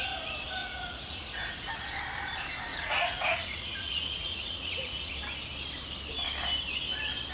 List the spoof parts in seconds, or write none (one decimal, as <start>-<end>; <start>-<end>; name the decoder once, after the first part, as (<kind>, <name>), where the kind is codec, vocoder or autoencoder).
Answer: 0.6-1.7 (vocoder, Vocos); 2.7-5.1